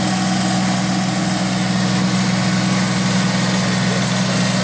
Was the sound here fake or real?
real